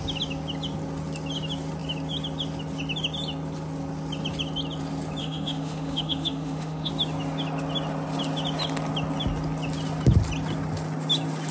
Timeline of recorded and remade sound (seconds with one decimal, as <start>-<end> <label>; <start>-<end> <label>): 0.0-5.2 recorded; 5.2-6.9 remade; 6.9-11.5 recorded